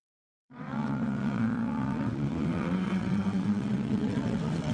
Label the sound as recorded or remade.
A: remade